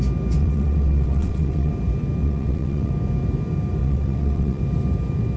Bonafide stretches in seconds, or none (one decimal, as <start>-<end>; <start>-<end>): 0.0-0.4; 1.7-2.2; 2.9-3.8; 4.6-5.4